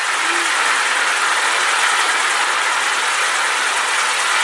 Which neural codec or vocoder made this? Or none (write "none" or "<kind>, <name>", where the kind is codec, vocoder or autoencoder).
none